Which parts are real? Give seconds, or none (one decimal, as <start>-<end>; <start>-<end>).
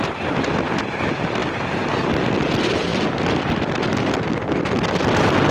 0.0-5.5